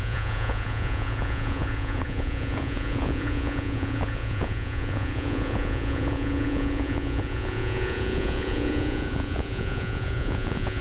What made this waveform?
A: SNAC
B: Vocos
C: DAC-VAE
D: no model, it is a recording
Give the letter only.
B